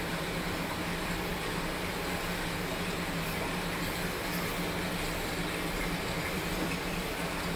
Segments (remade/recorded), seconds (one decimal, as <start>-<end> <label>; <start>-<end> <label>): 0.0-6.2 recorded; 6.2-7.6 remade